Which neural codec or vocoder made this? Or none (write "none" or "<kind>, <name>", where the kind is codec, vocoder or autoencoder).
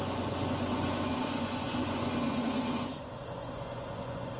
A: vocoder, Vocos